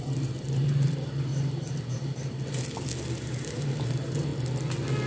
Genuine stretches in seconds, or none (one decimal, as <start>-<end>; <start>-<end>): 1.3-3.2; 4.3-5.1